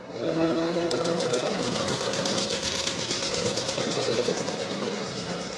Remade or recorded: remade